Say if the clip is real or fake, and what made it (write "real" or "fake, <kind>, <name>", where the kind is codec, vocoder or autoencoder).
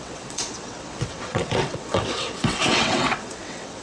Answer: fake, vocoder, WaveNeXt